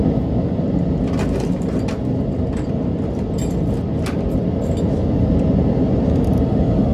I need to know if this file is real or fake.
real